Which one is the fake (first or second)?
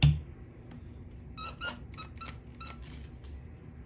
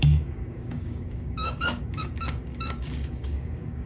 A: second